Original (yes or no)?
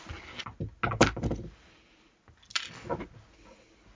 yes